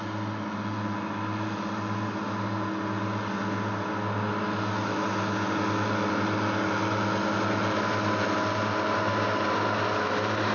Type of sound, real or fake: real